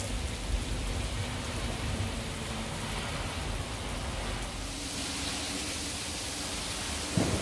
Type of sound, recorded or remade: recorded